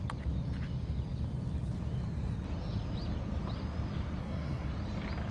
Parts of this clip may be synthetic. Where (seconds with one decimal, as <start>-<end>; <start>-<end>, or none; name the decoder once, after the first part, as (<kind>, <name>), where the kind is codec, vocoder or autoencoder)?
4.2-4.7 (codec, SNAC)